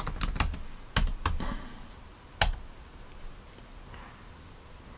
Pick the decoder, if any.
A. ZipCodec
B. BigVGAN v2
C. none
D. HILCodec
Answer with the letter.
C